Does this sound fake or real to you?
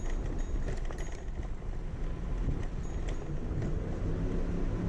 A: real